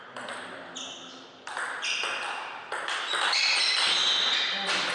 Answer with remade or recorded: recorded